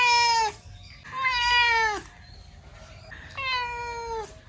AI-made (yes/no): no